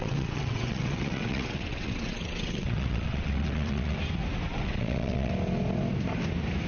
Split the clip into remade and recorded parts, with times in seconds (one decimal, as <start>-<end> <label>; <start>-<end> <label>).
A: 0.0-4.0 remade; 4.0-4.5 recorded; 4.5-5.3 remade; 5.3-6.7 recorded